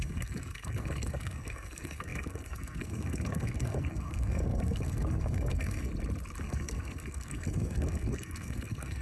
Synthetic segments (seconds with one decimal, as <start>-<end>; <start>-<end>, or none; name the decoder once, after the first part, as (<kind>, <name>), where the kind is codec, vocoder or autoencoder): 0.0-5.9 (codec, SNAC); 6.4-9.0